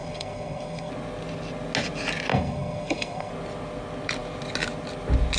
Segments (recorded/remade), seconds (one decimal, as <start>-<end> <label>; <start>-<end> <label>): 0.0-0.9 remade; 0.9-2.3 recorded; 2.3-3.3 remade; 3.3-5.4 recorded